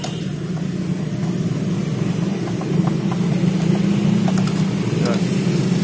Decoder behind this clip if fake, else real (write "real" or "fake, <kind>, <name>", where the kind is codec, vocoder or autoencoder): real